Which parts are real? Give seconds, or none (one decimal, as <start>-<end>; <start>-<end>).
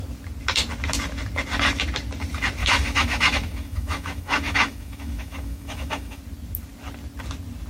0.0-2.6; 6.2-7.7